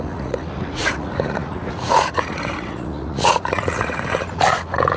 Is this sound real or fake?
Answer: fake